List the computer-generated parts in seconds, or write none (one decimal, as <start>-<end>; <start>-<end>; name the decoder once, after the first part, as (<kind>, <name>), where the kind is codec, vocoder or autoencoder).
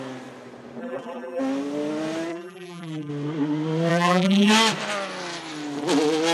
0.8-1.4 (vocoder, BigVGAN v2); 2.3-3.1; 3.9-4.5